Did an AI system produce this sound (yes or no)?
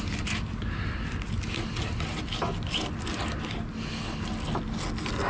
no